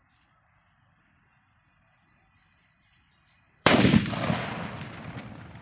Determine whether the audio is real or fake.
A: fake